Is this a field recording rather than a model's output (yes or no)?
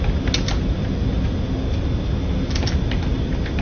yes